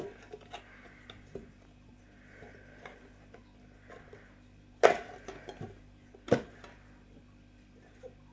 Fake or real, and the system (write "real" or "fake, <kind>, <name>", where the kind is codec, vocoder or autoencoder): real